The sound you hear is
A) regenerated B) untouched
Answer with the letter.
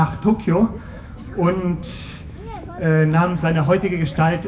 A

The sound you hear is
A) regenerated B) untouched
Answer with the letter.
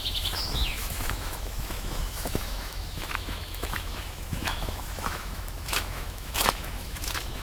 A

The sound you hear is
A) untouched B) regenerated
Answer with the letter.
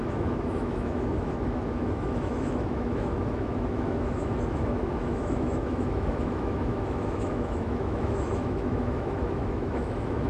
B